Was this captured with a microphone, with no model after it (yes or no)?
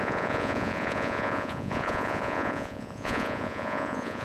no